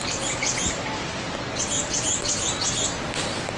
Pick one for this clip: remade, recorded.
recorded